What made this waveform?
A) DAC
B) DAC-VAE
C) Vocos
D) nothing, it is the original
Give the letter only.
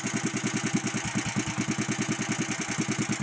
D